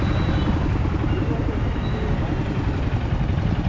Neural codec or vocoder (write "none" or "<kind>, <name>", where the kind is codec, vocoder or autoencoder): none